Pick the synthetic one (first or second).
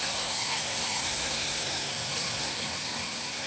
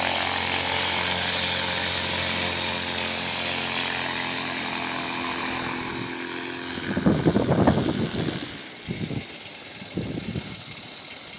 first